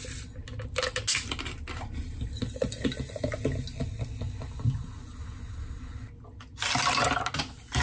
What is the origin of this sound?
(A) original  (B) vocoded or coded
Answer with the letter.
A